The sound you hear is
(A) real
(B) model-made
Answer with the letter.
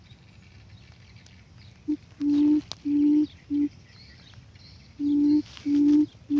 A